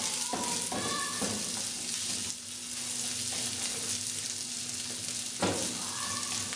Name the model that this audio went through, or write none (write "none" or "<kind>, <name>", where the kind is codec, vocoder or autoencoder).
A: none